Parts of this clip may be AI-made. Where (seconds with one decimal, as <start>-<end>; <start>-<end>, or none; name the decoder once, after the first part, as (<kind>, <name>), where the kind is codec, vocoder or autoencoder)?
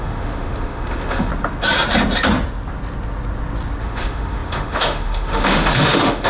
0.0-1.3 (autoencoder, DAC-VAE); 3.8-6.3